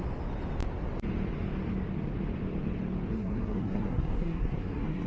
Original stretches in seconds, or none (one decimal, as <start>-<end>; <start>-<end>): 0.0-3.1